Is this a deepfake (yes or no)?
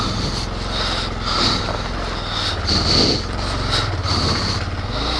no